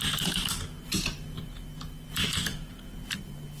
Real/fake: real